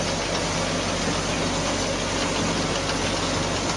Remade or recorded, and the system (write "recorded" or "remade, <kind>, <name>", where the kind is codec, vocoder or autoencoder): recorded